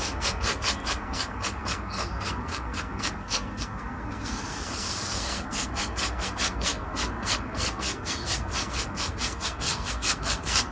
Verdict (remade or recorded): remade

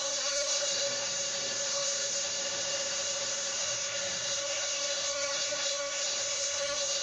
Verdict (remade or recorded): remade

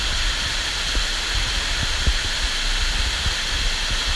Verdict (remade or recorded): recorded